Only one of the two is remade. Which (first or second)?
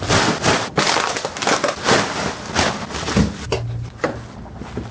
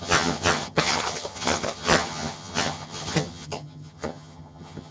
second